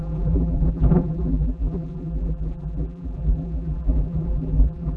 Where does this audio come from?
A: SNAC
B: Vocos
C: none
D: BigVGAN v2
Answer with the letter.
D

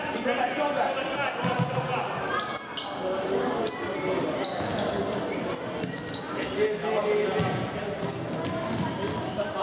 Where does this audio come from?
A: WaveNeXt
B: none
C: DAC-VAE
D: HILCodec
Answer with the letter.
B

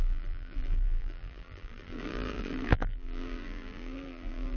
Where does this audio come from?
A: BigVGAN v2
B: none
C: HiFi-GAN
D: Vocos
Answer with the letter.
A